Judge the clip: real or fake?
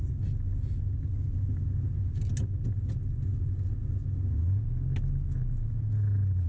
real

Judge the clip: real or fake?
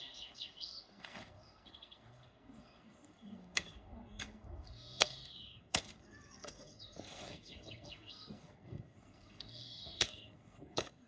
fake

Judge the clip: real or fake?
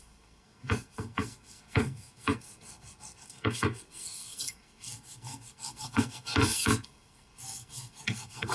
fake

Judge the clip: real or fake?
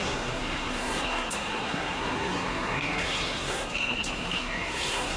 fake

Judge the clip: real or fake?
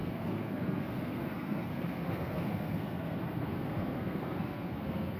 fake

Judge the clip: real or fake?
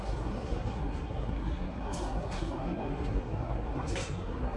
fake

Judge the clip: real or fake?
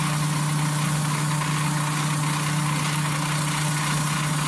real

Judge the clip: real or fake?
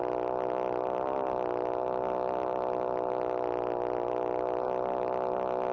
real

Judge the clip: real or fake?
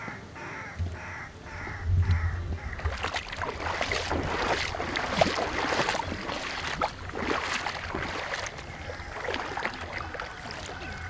real